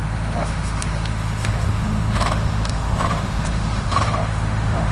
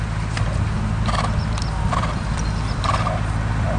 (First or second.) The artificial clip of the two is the first